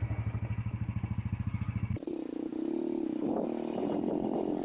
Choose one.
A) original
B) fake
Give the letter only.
A